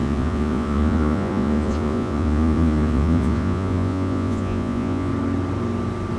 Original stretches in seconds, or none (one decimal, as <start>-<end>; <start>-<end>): 5.1-6.2